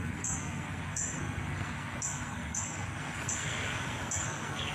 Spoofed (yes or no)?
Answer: yes